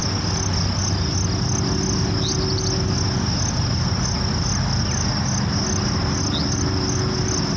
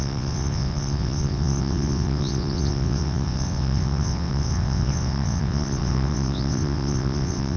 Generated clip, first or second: second